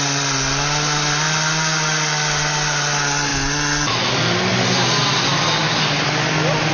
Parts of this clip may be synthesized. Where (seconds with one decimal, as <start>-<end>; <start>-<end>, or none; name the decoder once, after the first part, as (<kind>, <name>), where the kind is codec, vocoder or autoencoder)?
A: none